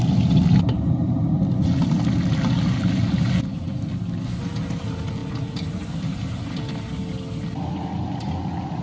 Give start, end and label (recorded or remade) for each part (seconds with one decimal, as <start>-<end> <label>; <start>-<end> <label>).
0.0-8.8 recorded